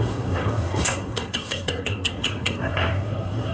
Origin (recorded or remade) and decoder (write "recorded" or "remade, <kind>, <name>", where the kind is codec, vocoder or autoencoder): remade, codec, SNAC